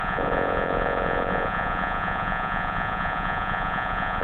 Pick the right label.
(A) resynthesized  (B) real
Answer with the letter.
A